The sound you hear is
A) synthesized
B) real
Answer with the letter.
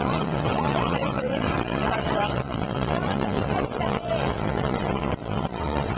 A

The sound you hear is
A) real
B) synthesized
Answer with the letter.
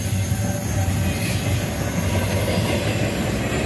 A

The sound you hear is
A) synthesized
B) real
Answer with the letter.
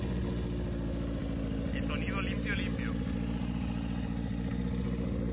B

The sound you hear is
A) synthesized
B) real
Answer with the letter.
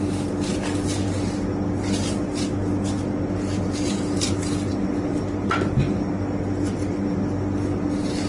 B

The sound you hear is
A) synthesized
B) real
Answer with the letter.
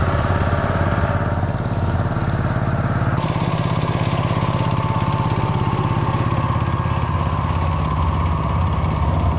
B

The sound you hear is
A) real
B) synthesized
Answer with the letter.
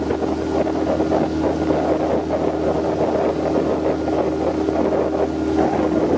A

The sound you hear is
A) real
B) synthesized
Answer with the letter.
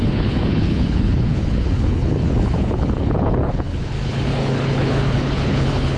B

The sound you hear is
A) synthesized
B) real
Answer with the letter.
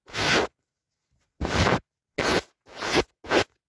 B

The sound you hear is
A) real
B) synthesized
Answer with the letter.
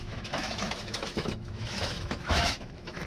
B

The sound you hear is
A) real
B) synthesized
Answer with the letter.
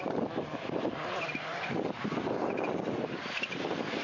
A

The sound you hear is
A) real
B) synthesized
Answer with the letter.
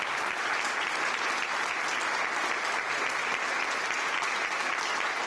A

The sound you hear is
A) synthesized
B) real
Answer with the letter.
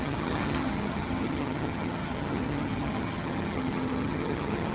A